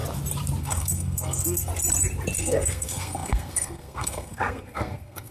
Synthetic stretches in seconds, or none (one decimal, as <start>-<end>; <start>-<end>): 0.6-1.7; 2.4-5.3